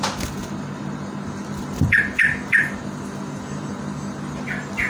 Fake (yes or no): no